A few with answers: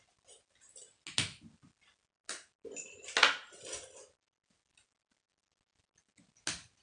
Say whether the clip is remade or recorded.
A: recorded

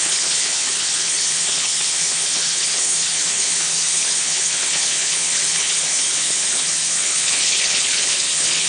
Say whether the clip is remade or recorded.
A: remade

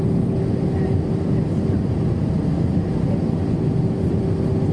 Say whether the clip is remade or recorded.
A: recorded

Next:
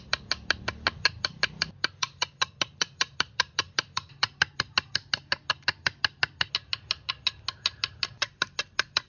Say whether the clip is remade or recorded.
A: recorded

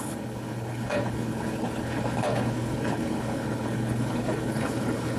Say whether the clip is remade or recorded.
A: remade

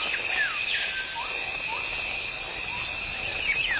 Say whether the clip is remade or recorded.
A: recorded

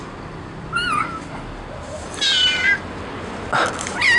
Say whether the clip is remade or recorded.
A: recorded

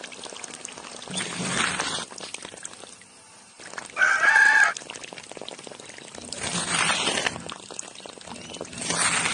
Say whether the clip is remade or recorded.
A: recorded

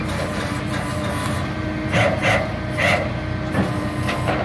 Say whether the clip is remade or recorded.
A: recorded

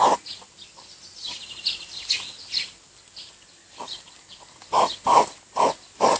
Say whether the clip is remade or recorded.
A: recorded